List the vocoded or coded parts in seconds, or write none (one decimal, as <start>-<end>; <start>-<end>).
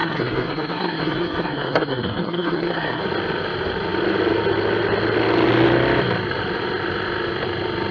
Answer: 0.0-3.0